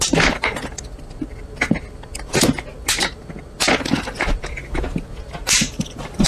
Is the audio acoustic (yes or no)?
yes